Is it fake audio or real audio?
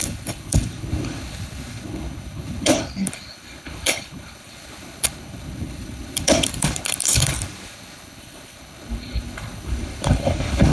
fake